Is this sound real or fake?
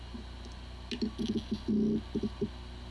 real